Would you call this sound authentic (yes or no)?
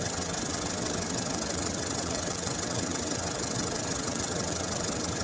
no